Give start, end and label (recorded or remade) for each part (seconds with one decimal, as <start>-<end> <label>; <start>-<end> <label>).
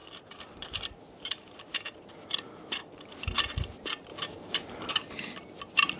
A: 0.0-2.1 remade; 2.1-4.1 recorded; 4.1-4.9 remade; 4.9-6.0 recorded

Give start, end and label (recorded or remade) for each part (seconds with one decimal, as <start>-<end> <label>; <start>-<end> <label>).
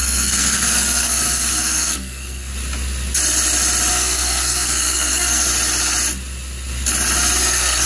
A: 0.0-2.5 remade; 2.5-3.9 recorded; 3.9-5.5 remade; 5.5-7.4 recorded; 7.4-7.9 remade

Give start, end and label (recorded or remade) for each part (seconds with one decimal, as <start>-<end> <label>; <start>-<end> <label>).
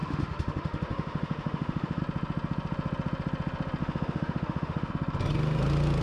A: 0.0-2.0 remade; 2.0-3.8 recorded; 3.8-4.9 remade; 4.9-6.0 recorded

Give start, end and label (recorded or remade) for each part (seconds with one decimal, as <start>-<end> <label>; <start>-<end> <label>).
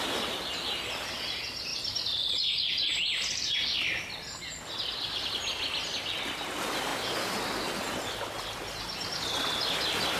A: 0.0-10.2 recorded